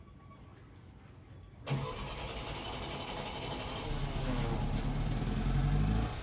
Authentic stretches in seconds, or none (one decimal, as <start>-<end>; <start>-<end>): 0.0-6.2